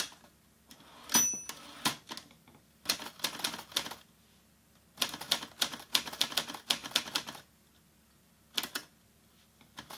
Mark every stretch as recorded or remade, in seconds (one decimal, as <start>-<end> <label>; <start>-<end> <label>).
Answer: 0.0-10.0 recorded